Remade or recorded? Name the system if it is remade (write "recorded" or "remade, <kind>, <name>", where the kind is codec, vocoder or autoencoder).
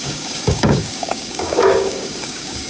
remade, codec, DAC